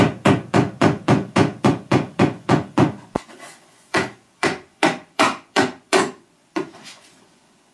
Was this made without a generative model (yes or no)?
no